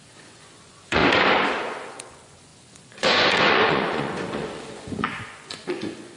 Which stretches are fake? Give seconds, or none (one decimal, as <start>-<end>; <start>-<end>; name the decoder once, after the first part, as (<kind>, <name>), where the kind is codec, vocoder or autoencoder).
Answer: 0.0-1.0 (vocoder, Vocos); 1.6-6.2